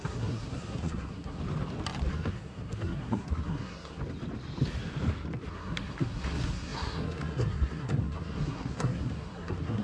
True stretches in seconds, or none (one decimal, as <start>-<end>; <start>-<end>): 1.4-2.1; 4.0-5.5